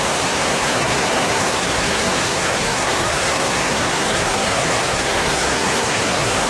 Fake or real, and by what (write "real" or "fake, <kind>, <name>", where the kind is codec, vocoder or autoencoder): fake, codec, SNAC